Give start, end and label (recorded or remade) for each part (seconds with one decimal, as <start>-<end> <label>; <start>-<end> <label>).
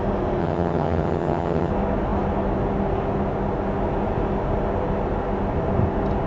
0.0-0.4 recorded; 0.4-1.7 remade; 1.7-6.3 recorded